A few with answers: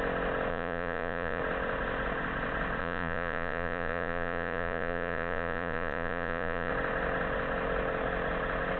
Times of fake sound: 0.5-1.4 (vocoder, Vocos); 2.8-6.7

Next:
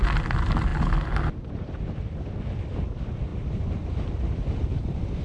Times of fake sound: none

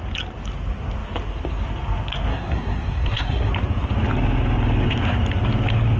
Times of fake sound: 2.3-3.5 (codec, SNAC)

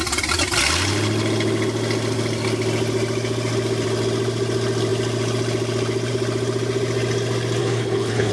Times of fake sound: 7.6-8.3 (codec, HILCodec)

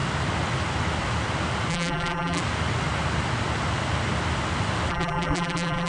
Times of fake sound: 1.7-2.4 (vocoder, BigVGAN v2); 4.9-5.9